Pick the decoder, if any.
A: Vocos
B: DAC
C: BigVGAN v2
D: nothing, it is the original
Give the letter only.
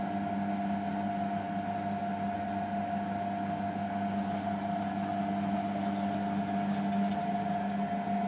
D